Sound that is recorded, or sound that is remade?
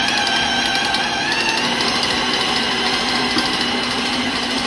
recorded